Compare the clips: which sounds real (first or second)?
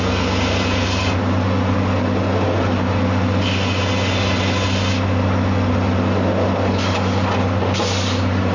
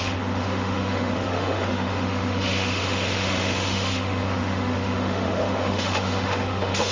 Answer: first